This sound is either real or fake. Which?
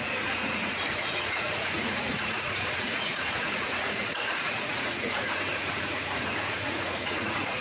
fake